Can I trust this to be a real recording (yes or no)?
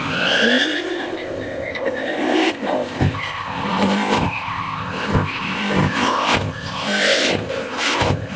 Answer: no